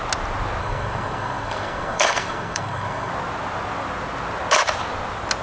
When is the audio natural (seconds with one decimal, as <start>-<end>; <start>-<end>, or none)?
0.0-0.6; 3.1-5.4

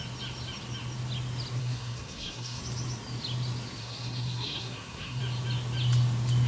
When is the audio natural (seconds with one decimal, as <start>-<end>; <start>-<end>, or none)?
0.0-1.6; 2.6-3.8; 5.2-6.5

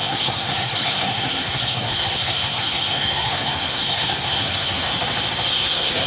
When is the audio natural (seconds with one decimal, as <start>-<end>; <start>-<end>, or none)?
4.9-5.5

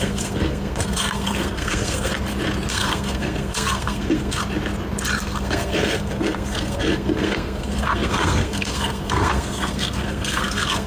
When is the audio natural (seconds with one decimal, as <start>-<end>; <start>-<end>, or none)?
2.1-2.7; 4.4-5.2